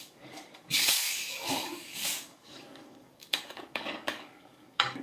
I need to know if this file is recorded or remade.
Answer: remade